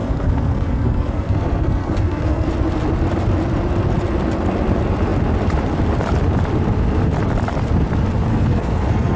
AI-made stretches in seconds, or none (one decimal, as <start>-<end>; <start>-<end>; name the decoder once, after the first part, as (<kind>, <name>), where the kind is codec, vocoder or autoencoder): 0.0-2.5 (codec, SNAC); 8.3-9.2